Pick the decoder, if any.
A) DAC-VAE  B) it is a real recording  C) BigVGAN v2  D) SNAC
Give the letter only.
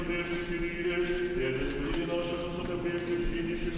B